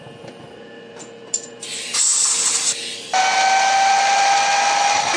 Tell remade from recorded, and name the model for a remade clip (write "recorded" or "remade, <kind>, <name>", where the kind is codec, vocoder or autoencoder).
recorded